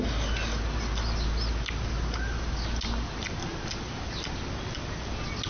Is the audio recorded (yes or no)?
yes